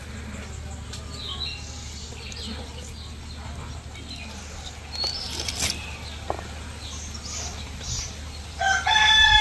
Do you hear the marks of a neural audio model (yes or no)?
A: no